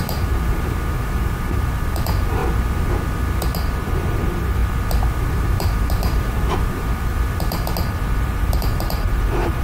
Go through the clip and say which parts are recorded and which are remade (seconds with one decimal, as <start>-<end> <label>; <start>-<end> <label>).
0.0-2.4 remade; 2.4-3.8 recorded; 3.8-4.6 remade; 4.6-5.2 recorded; 5.2-7.1 remade; 7.1-8.3 recorded; 8.3-9.6 remade